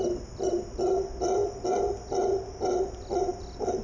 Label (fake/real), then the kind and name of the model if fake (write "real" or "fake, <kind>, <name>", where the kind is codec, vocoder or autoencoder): real